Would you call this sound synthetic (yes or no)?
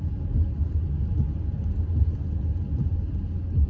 no